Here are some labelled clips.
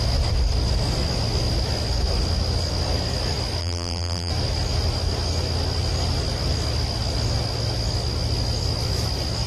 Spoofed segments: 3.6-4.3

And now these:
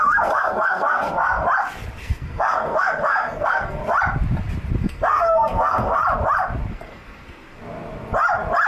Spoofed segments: 0.0-1.4; 2.0-3.8; 4.8-6.0; 6.7-7.6